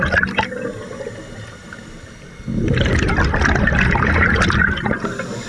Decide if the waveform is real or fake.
real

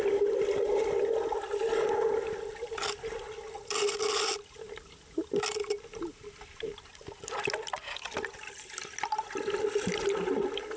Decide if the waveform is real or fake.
real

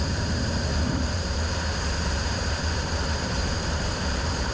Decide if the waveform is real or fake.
fake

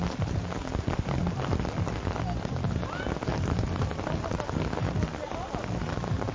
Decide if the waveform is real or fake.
real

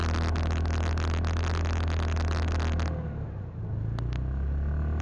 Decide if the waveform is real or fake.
real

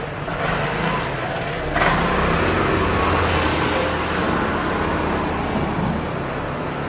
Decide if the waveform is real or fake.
real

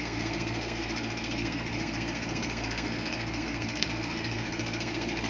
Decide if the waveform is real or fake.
fake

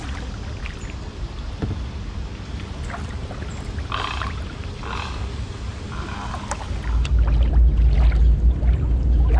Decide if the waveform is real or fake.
real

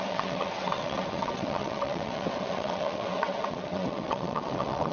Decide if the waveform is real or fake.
fake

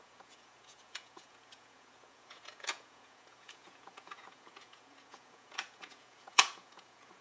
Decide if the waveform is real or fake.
fake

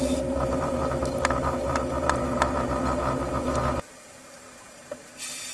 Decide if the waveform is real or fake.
fake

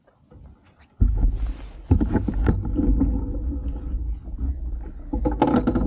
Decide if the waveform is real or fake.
real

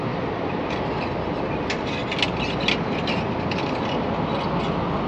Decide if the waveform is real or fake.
real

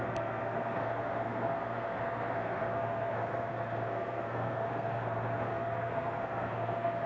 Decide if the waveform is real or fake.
fake